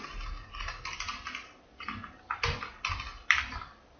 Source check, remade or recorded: recorded